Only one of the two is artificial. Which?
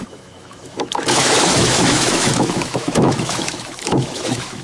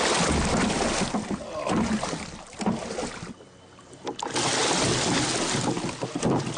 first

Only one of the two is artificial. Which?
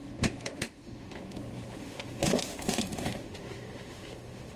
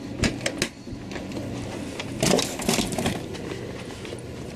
first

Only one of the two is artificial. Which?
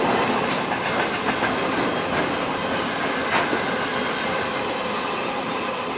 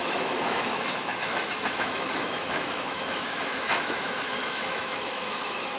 second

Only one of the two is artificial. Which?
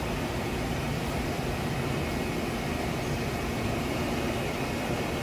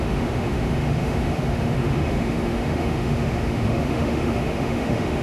second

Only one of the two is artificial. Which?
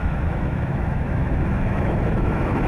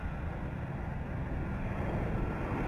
first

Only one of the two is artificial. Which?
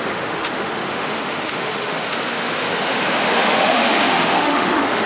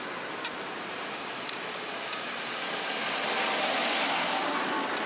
first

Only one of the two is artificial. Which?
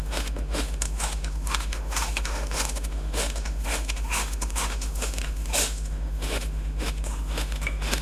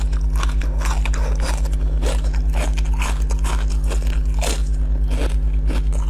first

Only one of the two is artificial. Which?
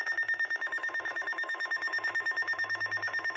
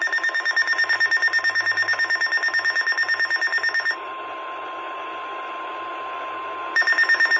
first